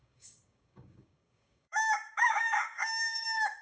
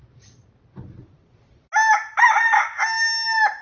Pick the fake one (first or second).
first